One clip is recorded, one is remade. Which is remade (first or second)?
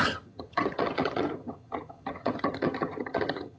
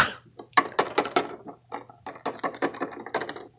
first